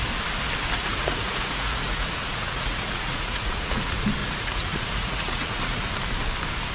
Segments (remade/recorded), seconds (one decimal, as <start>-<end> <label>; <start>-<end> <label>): 0.0-0.8 recorded; 0.8-3.8 remade; 3.8-4.2 recorded; 4.2-5.8 remade; 5.8-6.7 recorded